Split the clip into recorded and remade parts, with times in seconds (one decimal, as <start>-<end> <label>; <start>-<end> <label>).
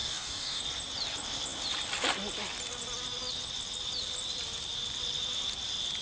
0.0-0.6 remade; 0.6-6.0 recorded